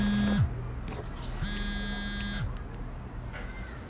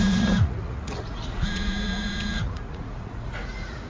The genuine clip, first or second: first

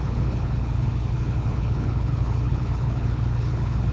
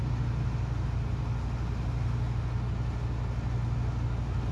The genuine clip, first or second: second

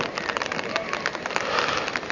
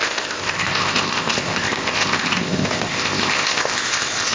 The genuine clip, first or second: first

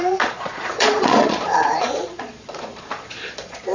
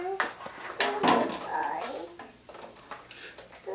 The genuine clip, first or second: second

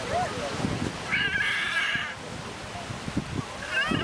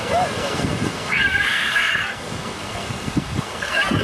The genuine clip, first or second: first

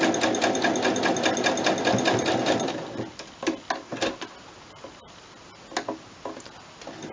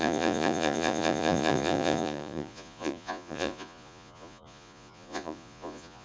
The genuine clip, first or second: first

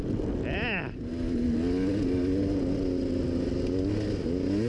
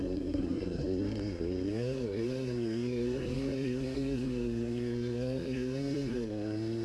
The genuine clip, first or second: first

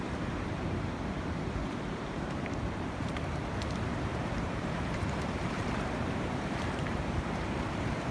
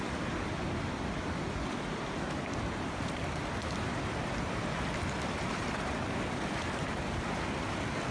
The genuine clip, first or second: second